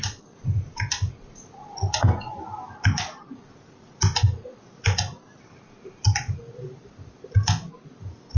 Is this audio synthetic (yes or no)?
no